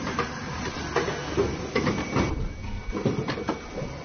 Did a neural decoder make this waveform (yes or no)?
no